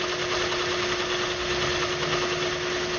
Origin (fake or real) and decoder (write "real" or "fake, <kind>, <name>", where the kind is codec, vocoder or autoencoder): real